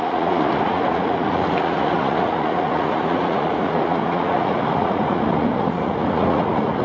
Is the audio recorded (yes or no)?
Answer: no